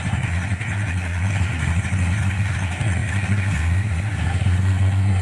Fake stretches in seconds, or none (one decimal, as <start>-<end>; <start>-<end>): 0.0-5.2